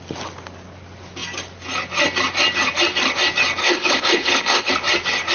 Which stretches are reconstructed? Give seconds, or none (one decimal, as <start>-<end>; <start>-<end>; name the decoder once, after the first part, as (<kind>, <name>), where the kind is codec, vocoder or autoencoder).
3.6-4.7 (codec, HILCodec)